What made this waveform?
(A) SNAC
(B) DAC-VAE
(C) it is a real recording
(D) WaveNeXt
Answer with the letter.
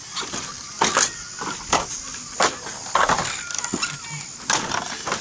C